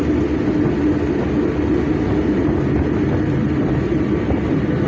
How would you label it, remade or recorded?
recorded